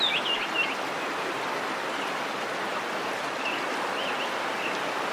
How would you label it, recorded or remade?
recorded